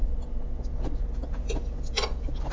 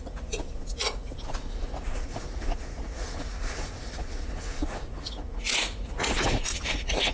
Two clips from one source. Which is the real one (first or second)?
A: first